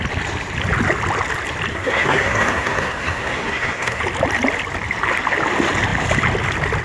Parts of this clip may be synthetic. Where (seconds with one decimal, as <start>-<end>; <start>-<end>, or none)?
1.7-4.0